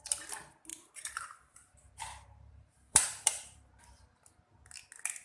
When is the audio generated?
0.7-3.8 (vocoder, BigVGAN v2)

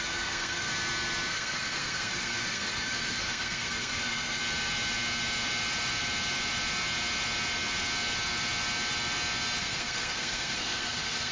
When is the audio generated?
0.0-0.7 (codec, SNAC); 1.3-4.4; 9.6-11.3

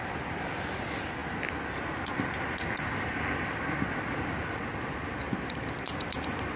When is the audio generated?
none

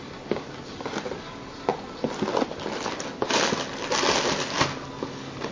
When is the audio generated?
none

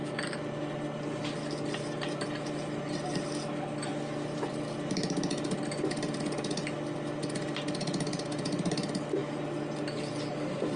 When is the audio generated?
none